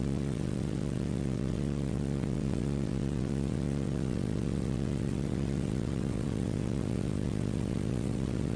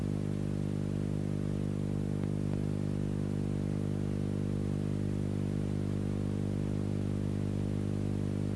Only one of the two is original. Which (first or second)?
second